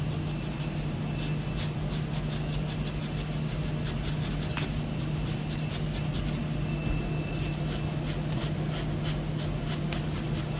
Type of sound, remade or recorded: recorded